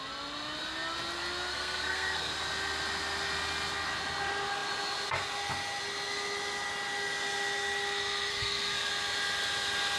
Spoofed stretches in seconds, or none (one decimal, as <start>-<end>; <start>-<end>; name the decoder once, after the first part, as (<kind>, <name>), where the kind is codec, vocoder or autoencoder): 1.5-2.3 (codec, SNAC); 8.3-8.9